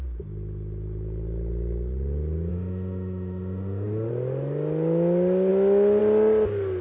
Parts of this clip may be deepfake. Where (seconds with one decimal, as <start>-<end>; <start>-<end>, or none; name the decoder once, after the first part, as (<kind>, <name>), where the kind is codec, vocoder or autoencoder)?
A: 2.5-4.1 (autoencoder, DAC-VAE)